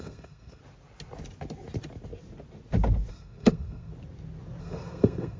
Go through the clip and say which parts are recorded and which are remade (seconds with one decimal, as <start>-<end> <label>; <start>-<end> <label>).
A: 0.0-0.6 remade; 0.6-3.1 recorded; 3.1-3.9 remade; 3.9-4.6 recorded; 4.6-5.4 remade